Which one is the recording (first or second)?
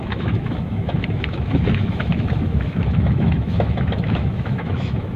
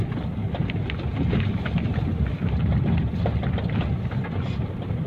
second